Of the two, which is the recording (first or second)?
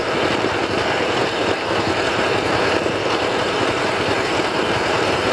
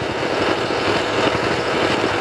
second